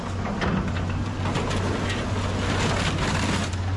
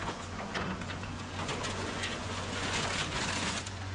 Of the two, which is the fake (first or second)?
second